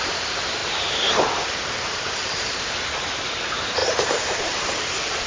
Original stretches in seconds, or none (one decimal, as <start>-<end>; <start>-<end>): none